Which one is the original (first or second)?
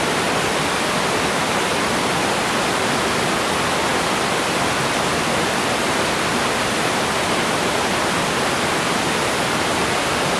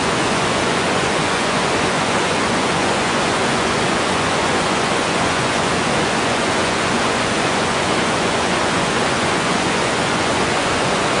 first